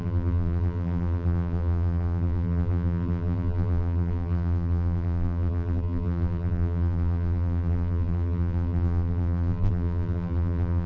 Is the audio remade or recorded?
remade